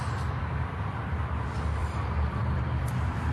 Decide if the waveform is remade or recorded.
remade